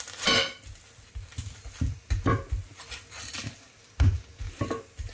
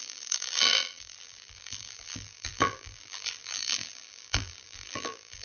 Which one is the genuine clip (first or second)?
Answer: first